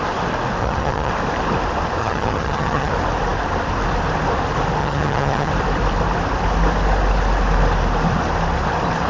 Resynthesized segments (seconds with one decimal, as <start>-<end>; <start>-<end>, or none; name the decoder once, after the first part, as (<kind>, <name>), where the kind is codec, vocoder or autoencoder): 0.6-1.1 (vocoder, HiFi-GAN); 2.0-2.9; 4.8-5.5